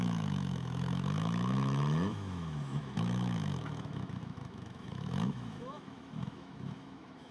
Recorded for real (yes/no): no